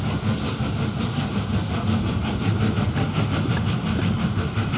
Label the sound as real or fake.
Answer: real